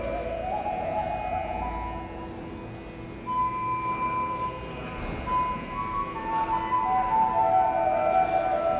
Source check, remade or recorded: recorded